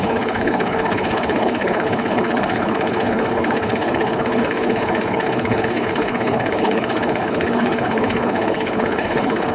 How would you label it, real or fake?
fake